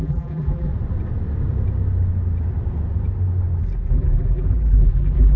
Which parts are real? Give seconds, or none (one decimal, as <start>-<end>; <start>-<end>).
0.7-3.9